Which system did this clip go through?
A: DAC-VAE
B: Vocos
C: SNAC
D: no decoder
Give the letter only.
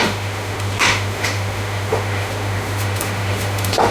A